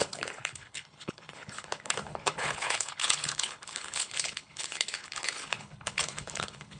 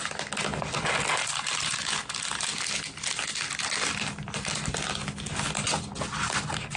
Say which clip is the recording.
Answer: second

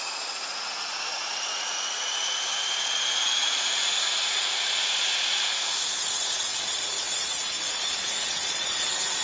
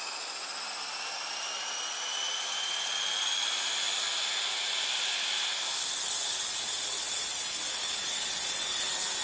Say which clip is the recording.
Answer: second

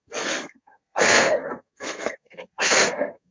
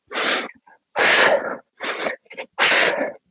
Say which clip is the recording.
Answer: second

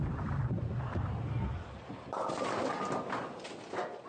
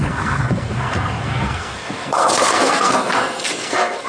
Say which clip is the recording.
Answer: first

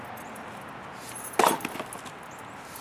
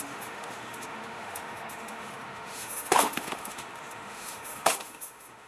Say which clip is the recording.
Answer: first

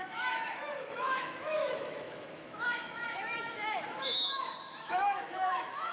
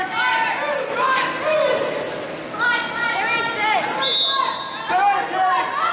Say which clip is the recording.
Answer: second